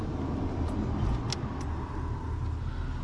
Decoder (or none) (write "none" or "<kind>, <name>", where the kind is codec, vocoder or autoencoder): none